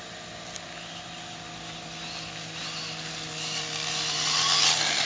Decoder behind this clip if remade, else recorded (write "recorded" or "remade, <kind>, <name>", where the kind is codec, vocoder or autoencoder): recorded